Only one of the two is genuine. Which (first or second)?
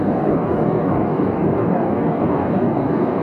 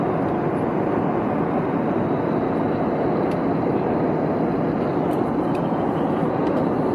second